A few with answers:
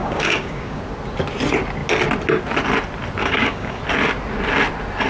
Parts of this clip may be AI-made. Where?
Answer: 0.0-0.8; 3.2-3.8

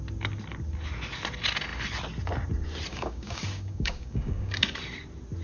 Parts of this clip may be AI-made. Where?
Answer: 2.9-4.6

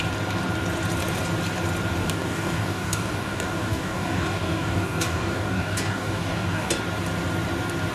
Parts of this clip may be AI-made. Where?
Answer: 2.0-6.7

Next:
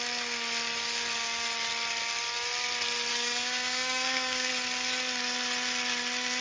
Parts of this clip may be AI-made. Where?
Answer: 3.1-4.5

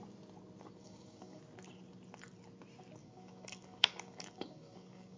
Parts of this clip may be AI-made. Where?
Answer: 0.8-1.4; 3.0-5.2